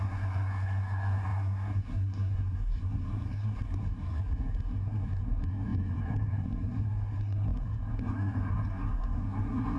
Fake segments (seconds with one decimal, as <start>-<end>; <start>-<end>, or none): 0.0-9.8

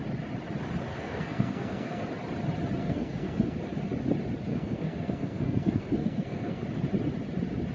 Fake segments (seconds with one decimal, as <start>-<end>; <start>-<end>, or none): 0.9-2.0; 2.8-3.6; 4.5-6.6

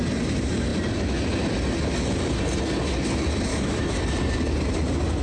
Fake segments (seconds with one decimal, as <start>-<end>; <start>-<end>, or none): 3.5-4.0

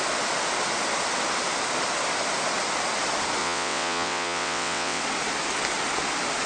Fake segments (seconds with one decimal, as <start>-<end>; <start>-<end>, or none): 3.4-5.0

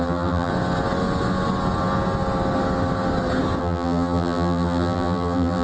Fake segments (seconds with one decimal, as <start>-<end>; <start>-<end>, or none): 0.0-0.5; 3.6-5.6

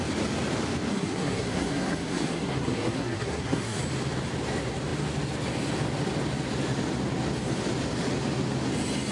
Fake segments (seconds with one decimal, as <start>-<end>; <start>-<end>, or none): 0.9-3.8

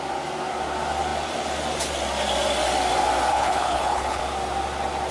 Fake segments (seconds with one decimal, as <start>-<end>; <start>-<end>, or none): 3.3-4.2